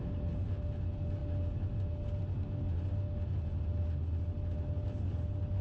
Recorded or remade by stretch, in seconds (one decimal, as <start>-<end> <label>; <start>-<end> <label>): 0.0-5.6 recorded